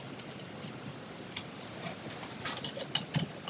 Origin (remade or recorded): recorded